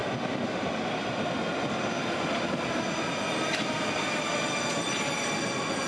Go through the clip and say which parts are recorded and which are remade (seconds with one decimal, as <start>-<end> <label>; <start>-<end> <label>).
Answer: 0.0-5.9 recorded